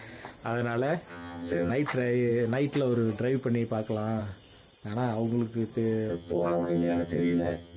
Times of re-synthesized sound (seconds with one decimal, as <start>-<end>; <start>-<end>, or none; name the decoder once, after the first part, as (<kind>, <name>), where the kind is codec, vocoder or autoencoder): 1.1-1.7 (vocoder, HiFi-GAN); 6.1-7.8